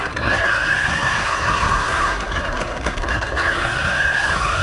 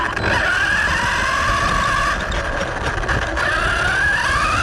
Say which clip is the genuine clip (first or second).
second